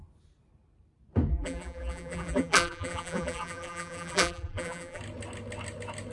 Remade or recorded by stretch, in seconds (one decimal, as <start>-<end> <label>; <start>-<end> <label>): 0.0-1.3 recorded; 1.3-5.0 remade; 5.0-6.1 recorded